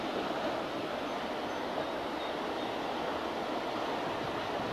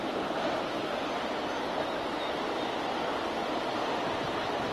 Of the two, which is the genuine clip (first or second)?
first